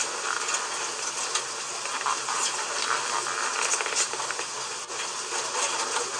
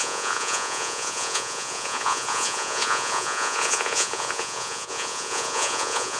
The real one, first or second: first